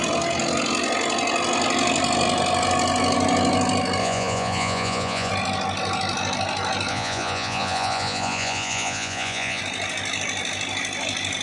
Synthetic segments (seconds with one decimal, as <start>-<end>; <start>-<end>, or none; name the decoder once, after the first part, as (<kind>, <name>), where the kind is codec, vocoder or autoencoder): 4.0-5.3 (vocoder, Vocos); 6.9-9.6